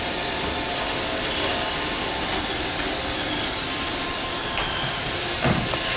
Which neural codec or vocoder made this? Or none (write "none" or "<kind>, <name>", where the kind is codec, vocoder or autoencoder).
none